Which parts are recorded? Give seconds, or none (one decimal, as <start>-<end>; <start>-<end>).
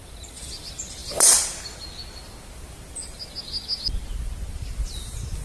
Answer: 0.0-5.4